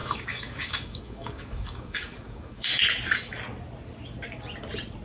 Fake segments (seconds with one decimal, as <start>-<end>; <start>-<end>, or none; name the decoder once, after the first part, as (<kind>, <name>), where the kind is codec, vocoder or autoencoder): 0.0-2.8 (codec, DAC)